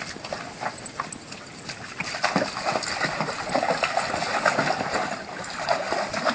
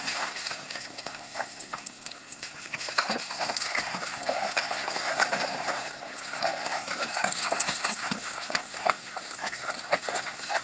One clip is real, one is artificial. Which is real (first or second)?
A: first